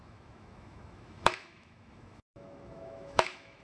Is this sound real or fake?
fake